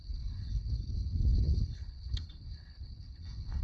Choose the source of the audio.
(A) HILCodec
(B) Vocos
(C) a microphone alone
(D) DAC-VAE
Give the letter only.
A